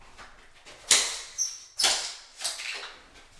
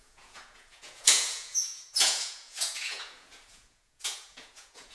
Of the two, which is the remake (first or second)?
second